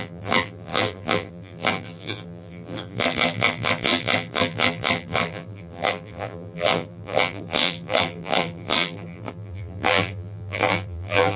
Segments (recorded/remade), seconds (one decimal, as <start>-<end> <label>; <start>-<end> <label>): 0.0-11.4 remade